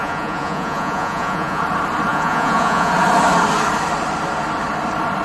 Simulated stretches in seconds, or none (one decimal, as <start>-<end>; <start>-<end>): 0.0-1.6; 2.1-2.9